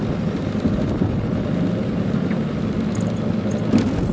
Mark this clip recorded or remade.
recorded